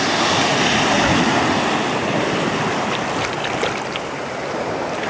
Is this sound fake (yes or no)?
no